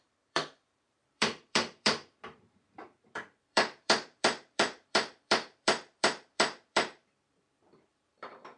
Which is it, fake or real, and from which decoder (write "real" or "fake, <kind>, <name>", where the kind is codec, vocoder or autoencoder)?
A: fake, vocoder, BigVGAN v2